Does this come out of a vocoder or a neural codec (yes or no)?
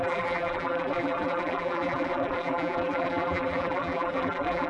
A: yes